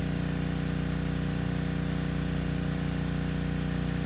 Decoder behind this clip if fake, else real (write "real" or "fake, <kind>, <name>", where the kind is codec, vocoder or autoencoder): real